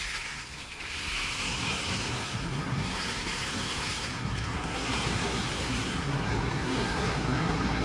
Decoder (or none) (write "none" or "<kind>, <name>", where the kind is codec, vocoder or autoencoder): codec, SNAC